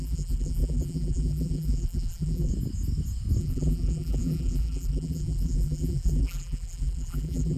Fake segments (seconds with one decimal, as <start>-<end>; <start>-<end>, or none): 0.0-2.5; 3.4-7.6